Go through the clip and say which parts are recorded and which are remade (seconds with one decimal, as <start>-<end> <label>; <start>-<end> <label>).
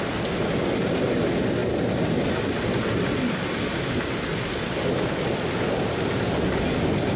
0.0-7.2 recorded